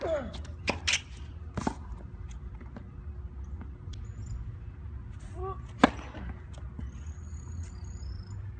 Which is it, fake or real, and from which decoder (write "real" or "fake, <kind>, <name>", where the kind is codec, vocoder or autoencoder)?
real